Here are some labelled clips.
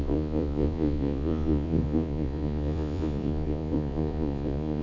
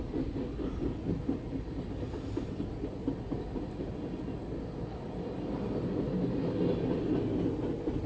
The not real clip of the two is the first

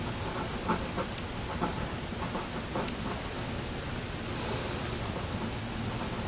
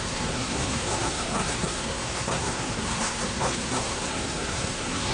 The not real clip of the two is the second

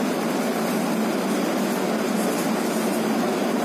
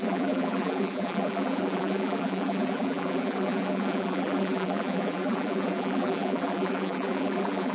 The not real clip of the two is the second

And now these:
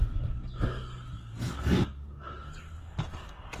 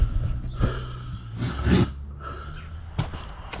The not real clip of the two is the first